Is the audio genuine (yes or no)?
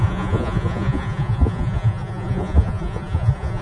no